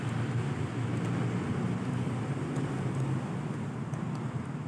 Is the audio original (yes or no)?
yes